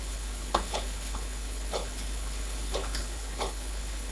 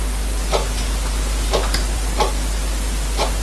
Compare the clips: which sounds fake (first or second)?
first